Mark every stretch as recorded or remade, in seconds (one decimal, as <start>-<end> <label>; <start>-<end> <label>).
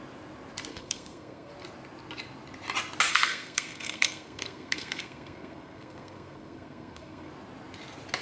0.0-0.7 recorded; 0.7-1.5 remade; 1.5-3.1 recorded; 3.1-7.3 remade; 7.3-8.2 recorded